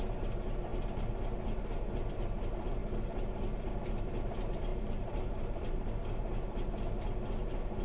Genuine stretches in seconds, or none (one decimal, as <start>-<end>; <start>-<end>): 0.0-4.7; 5.9-7.8